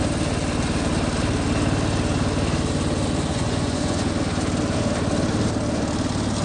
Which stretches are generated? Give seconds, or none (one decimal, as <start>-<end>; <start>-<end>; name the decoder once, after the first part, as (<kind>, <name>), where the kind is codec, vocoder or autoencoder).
3.3-4.1 (vocoder, Vocos)